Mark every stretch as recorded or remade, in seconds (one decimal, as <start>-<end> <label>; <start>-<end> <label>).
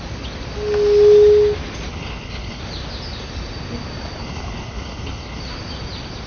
0.0-1.9 recorded; 1.9-2.6 remade; 2.6-4.2 recorded; 4.2-5.4 remade; 5.4-6.3 recorded